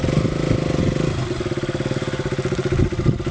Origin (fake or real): real